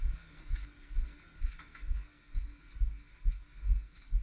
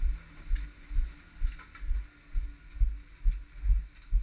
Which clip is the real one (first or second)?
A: second